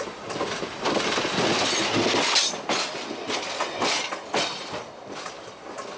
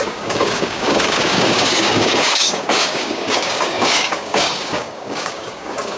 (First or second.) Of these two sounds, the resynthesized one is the second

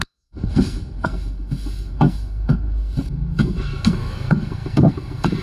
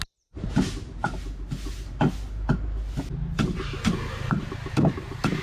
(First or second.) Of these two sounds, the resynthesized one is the first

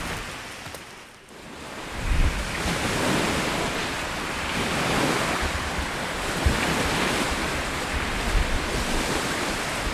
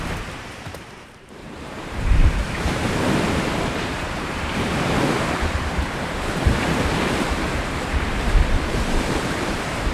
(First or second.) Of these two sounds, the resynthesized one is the second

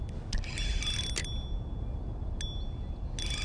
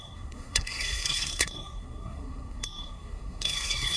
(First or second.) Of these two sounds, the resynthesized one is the second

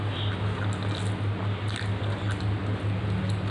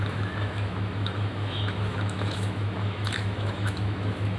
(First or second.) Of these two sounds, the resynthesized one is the second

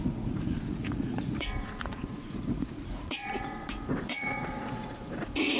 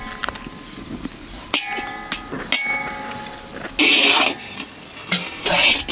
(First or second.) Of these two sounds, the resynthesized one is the first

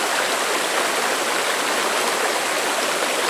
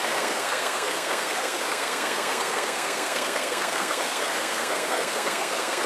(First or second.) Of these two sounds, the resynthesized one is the second